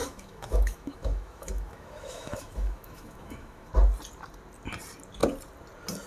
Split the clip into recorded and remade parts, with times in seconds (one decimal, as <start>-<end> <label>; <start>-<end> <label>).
0.0-3.7 remade; 3.7-6.1 recorded